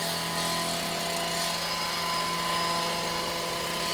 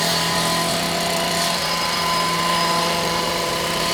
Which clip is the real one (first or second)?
first